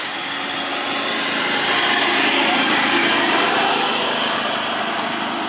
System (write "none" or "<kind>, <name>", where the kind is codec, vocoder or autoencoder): none